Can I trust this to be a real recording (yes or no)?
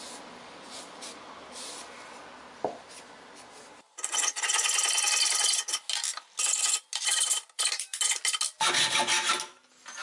yes